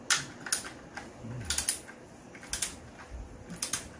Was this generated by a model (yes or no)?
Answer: no